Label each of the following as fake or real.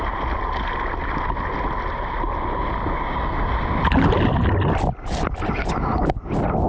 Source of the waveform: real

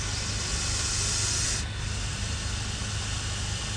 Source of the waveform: real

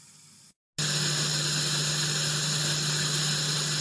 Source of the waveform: real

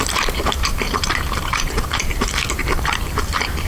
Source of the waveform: fake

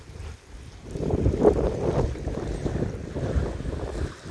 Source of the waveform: real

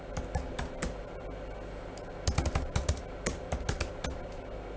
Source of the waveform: real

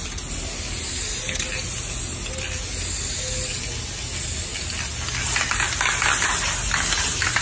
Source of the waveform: real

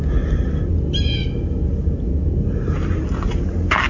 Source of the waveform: real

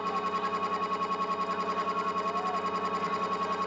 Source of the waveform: real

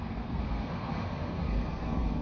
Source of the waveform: fake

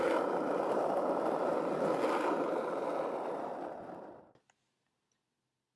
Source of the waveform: real